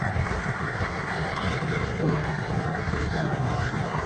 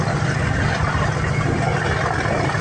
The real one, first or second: second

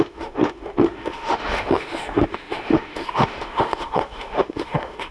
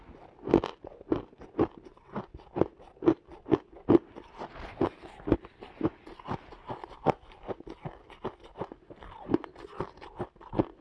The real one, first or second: second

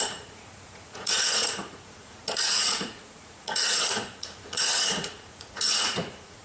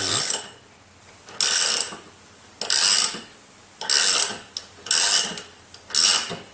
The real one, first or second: second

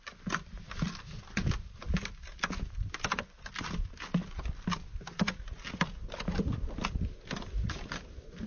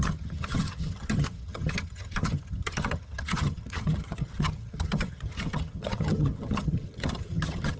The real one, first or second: first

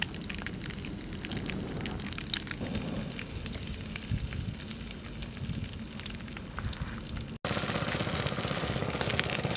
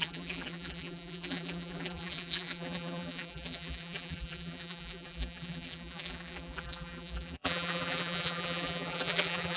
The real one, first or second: first